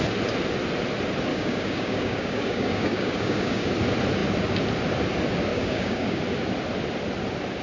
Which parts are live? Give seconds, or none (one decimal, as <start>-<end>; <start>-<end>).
0.0-1.3; 3.7-5.5; 6.2-7.6